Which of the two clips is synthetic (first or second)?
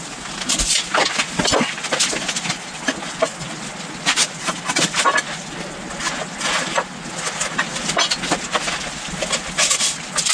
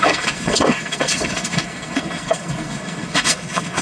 second